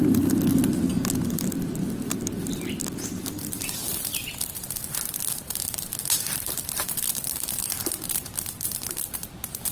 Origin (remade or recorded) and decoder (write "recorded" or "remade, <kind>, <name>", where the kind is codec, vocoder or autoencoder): recorded